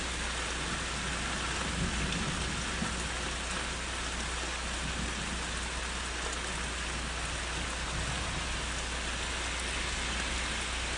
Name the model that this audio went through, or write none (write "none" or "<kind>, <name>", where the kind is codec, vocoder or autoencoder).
none